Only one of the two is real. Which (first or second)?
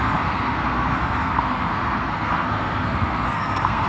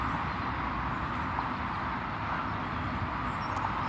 second